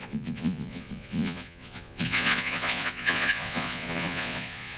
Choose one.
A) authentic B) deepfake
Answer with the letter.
B